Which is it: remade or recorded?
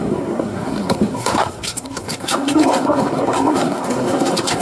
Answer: remade